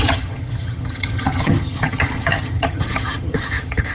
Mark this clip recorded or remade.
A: remade